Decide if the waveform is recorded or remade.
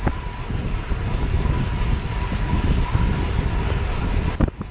recorded